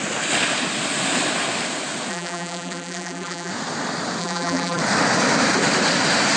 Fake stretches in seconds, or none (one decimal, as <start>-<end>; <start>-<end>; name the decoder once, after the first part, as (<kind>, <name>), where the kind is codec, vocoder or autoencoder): 2.1-3.5 (vocoder, BigVGAN v2); 4.2-4.8